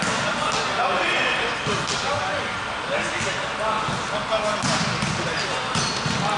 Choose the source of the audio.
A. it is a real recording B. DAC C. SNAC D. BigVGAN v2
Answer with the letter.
A